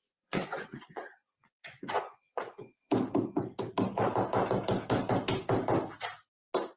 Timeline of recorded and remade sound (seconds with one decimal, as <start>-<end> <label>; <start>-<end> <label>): 0.0-2.9 remade; 2.9-6.8 recorded